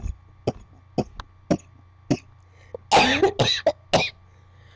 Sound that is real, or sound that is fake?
real